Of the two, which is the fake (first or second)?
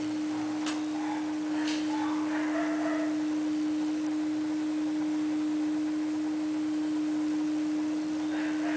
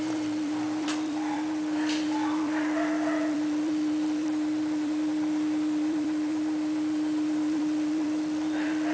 second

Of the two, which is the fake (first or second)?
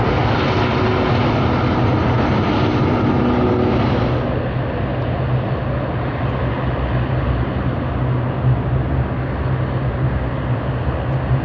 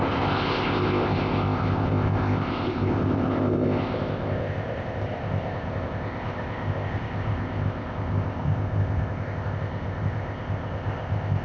second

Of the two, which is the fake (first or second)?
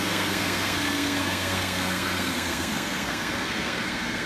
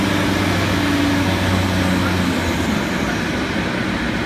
first